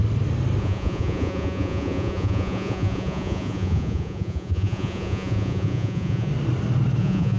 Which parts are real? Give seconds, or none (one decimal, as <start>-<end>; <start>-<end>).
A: 0.0-0.6; 6.3-7.0

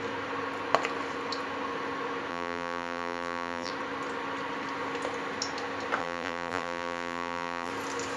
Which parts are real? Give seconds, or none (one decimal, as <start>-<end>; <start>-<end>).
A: 0.0-2.3; 3.7-6.0; 7.7-8.2

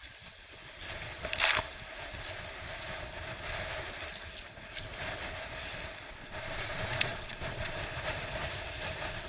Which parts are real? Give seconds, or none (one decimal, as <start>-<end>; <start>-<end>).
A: 0.0-6.2; 7.8-9.3

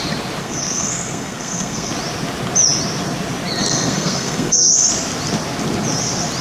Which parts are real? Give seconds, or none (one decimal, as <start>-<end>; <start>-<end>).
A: 0.0-0.4; 1.9-3.7; 4.9-6.4